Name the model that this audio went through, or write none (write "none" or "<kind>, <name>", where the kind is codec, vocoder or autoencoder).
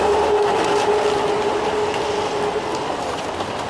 none